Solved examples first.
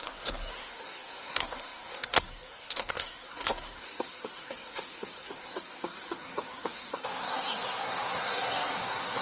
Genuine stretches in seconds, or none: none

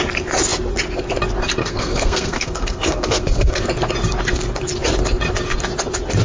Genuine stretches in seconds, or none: 0.0-1.6; 3.7-6.2

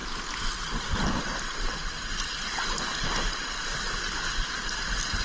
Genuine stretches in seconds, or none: 0.0-5.2

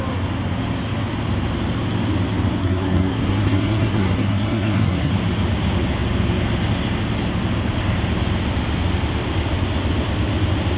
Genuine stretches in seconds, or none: 0.0-2.6; 5.1-10.8